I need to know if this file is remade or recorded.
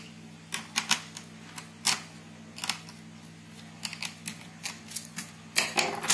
recorded